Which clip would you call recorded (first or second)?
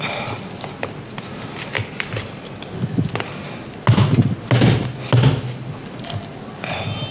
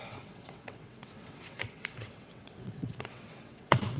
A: first